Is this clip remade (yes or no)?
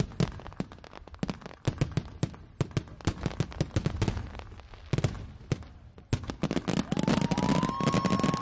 no